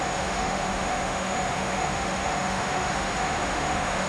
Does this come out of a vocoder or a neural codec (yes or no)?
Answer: yes